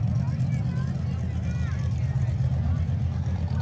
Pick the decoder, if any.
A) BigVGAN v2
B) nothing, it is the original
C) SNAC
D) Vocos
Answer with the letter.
B